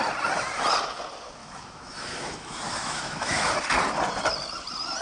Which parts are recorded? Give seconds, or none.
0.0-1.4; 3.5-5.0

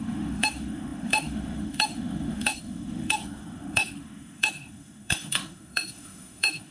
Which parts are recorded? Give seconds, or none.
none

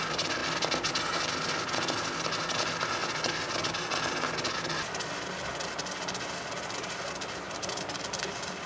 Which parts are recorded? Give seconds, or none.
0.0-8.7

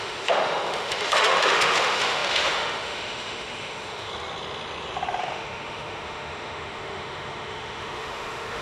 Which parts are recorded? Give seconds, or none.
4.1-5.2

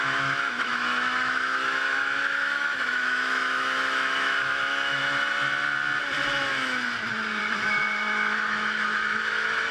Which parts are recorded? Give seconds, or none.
5.0-7.4

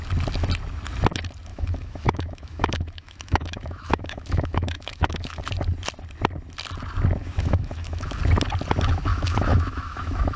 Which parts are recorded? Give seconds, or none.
0.0-1.5; 5.4-7.2; 8.2-9.1

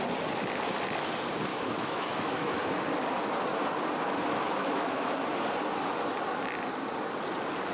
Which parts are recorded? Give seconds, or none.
0.0-1.5; 2.6-4.6; 5.1-7.7